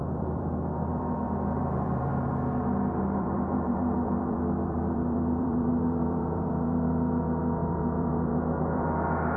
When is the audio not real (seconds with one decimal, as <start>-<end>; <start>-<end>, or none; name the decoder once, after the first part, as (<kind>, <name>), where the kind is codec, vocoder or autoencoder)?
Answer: 0.0-2.1 (vocoder, BigVGAN v2); 3.0-9.4